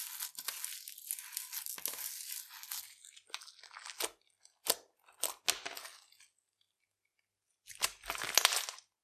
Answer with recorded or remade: recorded